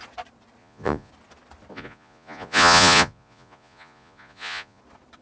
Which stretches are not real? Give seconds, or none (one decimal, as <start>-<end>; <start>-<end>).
0.6-1.1; 1.7-4.8